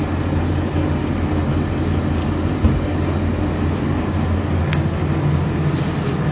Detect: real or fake real